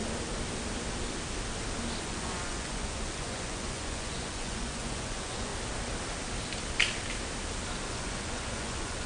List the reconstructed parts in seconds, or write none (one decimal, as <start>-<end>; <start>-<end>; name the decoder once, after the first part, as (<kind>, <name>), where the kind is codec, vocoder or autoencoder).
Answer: 2.0-5.5 (vocoder, Vocos); 7.9-9.1